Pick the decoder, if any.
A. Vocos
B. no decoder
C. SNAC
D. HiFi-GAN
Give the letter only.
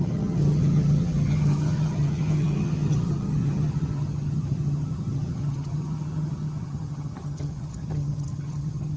D